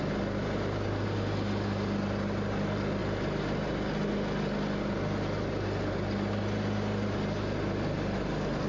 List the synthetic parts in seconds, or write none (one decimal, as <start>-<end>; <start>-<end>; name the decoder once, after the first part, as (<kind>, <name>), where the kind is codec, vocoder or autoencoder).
none